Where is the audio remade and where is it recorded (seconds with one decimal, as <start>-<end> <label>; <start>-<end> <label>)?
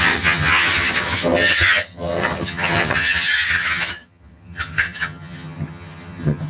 0.0-6.5 remade